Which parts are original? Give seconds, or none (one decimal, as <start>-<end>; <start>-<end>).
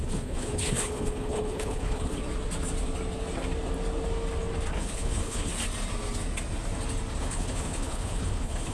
2.2-4.7; 5.5-7.2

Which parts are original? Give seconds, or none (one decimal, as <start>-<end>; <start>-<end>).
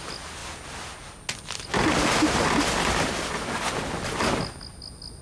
0.0-5.2